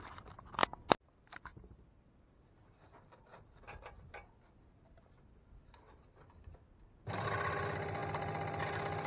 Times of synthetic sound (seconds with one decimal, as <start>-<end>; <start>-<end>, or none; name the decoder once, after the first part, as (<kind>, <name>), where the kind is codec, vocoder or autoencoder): none